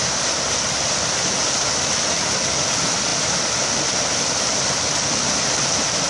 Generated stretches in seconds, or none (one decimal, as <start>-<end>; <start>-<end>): none